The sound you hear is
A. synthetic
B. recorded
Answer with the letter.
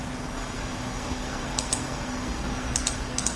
A